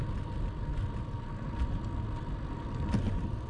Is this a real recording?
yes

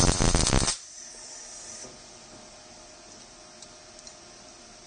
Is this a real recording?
yes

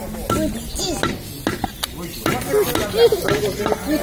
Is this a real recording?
yes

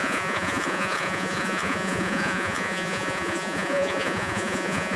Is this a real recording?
no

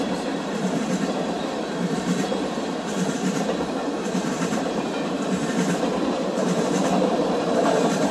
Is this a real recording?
no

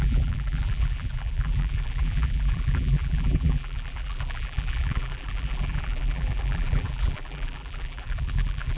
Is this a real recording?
no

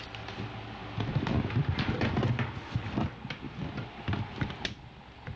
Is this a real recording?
yes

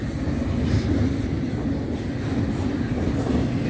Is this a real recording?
yes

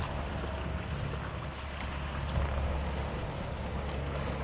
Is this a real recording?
yes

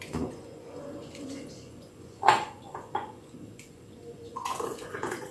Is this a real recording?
no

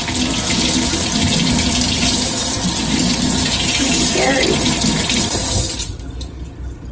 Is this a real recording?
yes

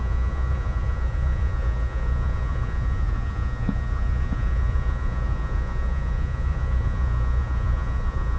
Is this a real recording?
no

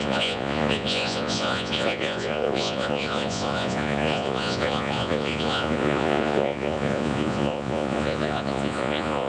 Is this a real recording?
no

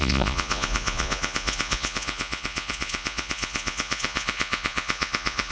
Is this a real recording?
no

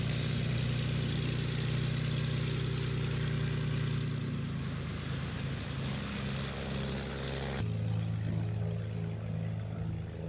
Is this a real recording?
yes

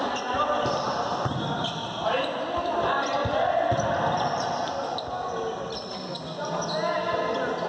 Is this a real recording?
yes